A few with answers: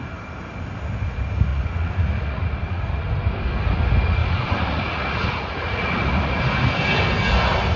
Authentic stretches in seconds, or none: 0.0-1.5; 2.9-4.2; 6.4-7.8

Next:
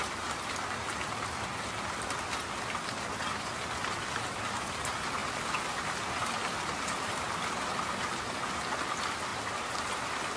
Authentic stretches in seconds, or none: 0.0-5.2; 8.0-9.3

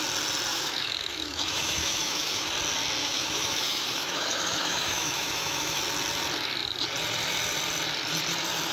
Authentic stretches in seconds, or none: 0.0-0.5; 2.5-3.0; 5.8-8.7

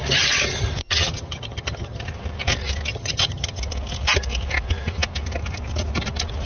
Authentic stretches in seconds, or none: 0.0-0.8; 2.0-2.9; 3.6-6.5